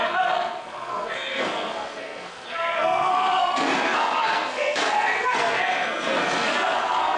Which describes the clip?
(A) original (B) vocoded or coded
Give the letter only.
B